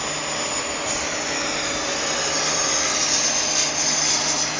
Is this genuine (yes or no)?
yes